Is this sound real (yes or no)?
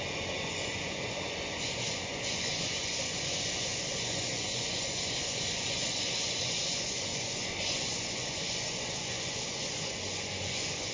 no